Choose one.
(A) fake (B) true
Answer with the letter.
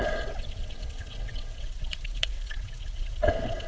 A